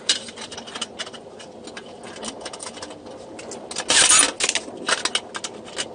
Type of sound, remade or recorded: recorded